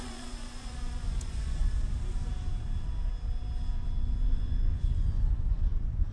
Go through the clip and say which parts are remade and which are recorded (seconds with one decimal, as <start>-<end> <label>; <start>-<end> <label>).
0.0-1.6 remade; 1.6-4.3 recorded; 4.3-6.1 remade